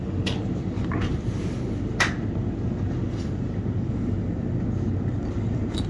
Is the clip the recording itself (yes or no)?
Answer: yes